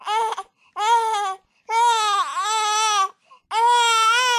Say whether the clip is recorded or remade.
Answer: recorded